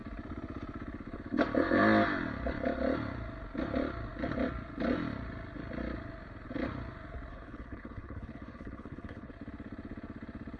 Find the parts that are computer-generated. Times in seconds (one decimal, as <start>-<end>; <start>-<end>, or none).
7.3-9.3